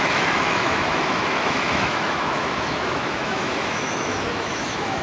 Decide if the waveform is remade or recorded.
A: remade